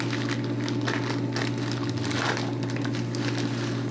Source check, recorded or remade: recorded